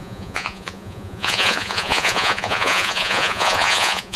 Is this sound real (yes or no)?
no